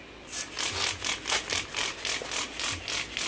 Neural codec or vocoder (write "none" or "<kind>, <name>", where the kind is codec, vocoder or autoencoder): none